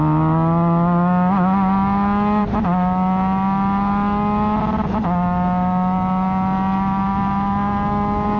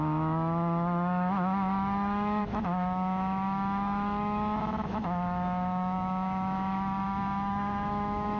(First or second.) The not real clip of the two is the second